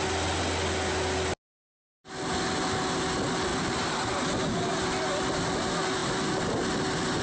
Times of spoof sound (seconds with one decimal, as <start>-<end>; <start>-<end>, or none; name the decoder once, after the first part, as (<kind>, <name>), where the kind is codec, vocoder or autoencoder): 3.5-4.1 (vocoder, BigVGAN v2)